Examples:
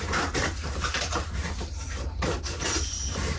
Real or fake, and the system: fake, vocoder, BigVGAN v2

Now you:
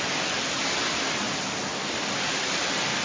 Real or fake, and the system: fake, vocoder, BigVGAN v2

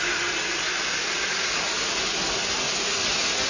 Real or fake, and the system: real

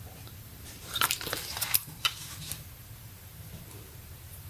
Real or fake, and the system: fake, vocoder, BigVGAN v2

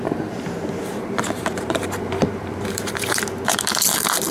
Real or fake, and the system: fake, vocoder, BigVGAN v2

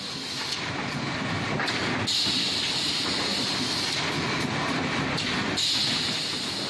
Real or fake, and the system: real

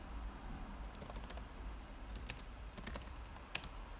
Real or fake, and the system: real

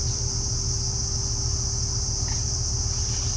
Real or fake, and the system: real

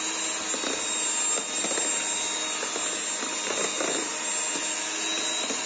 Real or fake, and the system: real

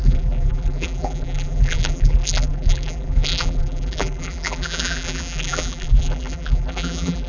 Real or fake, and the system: fake, vocoder, BigVGAN v2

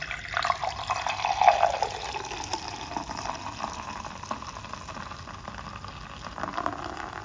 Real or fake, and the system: real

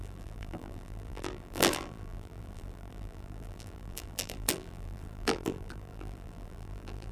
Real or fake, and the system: fake, vocoder, BigVGAN v2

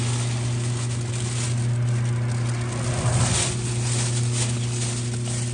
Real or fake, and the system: real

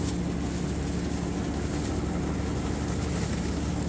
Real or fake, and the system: real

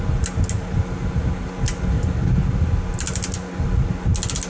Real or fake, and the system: real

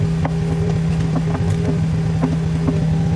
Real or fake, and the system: real